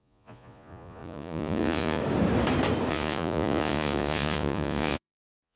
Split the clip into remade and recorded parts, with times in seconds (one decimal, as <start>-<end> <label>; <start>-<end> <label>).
0.0-2.0 remade; 2.0-2.9 recorded; 2.9-5.6 remade